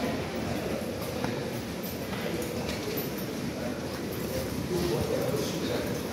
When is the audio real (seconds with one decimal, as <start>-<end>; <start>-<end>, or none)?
none